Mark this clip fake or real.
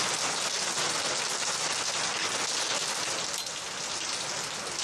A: real